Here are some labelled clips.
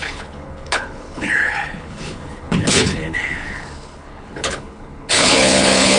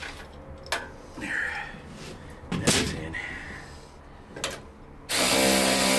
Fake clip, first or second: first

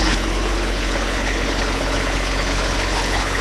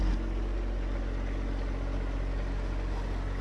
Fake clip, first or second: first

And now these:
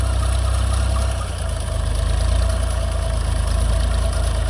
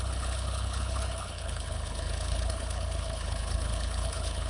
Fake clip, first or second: second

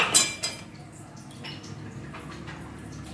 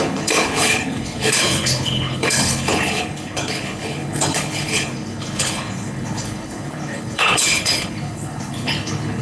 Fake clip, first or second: second